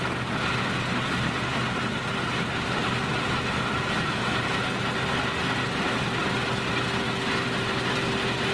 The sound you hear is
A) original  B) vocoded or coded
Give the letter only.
A